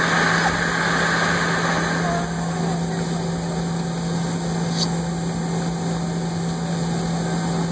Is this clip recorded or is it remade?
recorded